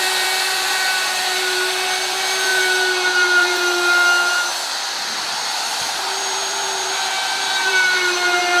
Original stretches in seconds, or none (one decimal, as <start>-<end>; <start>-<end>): none